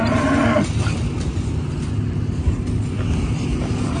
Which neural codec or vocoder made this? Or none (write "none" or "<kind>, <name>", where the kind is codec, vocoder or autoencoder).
none